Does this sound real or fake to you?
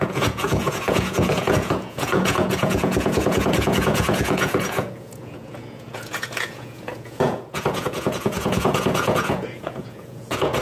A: fake